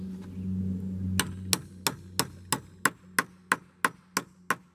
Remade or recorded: recorded